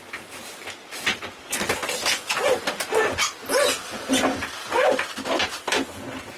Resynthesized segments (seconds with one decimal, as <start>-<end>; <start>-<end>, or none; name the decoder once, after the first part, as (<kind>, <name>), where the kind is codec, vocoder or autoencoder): none